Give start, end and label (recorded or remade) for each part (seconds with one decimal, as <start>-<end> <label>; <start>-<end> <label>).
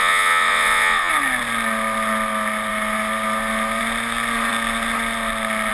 0.0-1.1 remade; 1.1-5.7 recorded